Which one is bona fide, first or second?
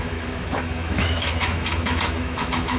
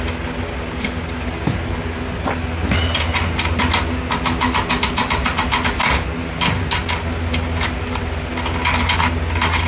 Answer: second